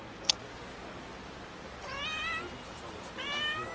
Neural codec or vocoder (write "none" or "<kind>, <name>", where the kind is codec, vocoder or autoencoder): none